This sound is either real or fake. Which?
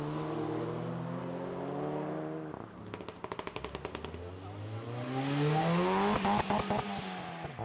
real